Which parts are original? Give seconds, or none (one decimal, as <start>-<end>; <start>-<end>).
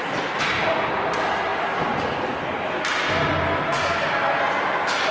0.0-5.1